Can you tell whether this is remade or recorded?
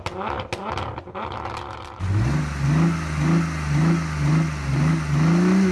recorded